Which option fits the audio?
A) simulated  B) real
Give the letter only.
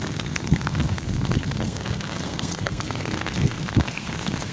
A